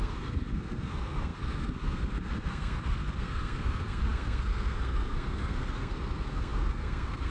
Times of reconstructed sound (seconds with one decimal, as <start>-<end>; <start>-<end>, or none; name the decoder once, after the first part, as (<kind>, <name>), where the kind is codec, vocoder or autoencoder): 0.0-7.3 (codec, SNAC)

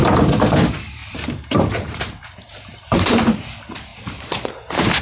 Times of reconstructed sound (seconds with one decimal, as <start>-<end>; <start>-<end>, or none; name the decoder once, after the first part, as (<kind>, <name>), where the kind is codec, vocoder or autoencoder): 1.0-3.2 (vocoder, BigVGAN v2); 3.9-4.5

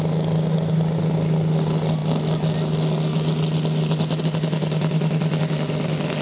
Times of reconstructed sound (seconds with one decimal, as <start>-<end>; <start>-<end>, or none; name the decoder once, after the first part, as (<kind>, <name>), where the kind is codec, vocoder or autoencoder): none

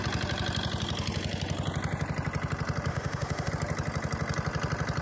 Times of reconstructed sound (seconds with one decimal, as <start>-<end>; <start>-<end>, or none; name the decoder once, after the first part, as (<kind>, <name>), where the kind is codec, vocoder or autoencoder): 2.9-3.5 (autoencoder, DAC-VAE)

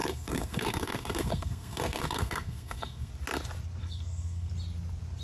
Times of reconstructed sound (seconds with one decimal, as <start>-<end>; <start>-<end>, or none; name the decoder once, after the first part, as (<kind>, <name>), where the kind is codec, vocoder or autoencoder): 0.0-3.1 (codec, SNAC); 3.8-4.5